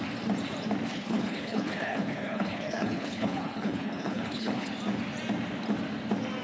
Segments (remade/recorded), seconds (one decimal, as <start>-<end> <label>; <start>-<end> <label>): 0.0-0.9 recorded; 0.9-4.7 remade; 4.7-6.4 recorded